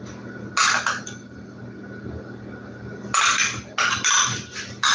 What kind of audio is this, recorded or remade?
recorded